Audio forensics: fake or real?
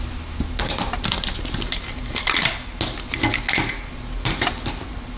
real